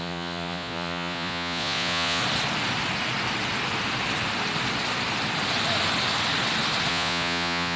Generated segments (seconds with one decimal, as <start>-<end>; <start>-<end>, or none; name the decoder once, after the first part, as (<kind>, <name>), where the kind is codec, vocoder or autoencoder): 0.0-2.2 (vocoder, Vocos); 6.9-7.8